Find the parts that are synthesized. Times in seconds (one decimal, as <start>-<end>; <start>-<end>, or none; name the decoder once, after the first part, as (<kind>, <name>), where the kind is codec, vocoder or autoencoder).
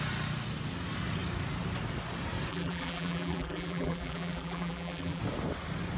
2.5-5.2 (vocoder, BigVGAN v2)